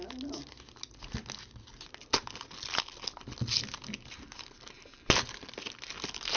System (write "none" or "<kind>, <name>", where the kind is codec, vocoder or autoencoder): none